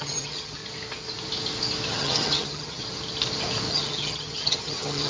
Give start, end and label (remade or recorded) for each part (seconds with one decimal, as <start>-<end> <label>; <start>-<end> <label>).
0.0-0.6 remade; 0.6-1.9 recorded; 1.9-2.8 remade; 2.8-3.7 recorded; 3.7-5.1 remade